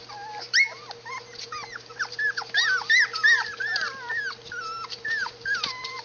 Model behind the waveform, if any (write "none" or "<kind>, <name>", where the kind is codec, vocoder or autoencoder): none